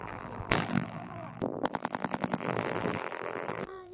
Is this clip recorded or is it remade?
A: remade